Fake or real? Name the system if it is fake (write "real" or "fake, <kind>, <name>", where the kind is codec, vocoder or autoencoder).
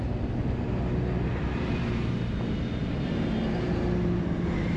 real